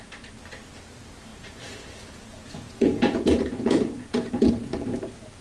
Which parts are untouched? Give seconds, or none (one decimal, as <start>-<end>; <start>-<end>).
0.0-1.3; 4.5-5.4